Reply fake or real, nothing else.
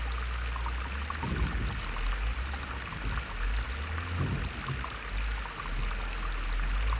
real